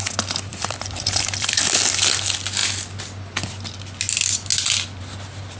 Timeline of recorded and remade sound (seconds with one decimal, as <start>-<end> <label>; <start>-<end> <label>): 0.0-0.5 recorded; 0.5-1.6 remade; 1.6-5.6 recorded